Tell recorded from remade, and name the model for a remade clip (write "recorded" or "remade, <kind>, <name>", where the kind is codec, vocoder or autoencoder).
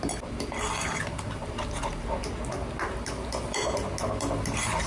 recorded